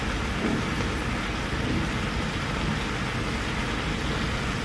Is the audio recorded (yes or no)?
yes